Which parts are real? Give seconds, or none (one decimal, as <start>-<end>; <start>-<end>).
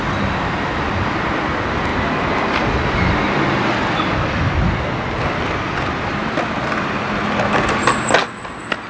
0.0-8.9